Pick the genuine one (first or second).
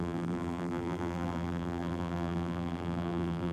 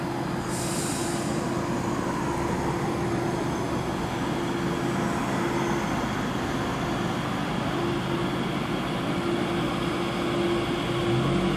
second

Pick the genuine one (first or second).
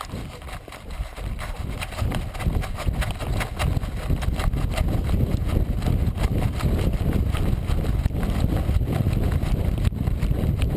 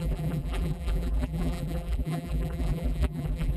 first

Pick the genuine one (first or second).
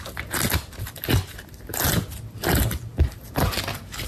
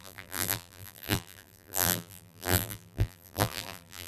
first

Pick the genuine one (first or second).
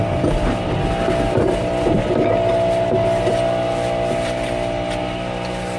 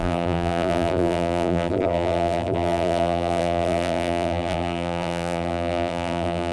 first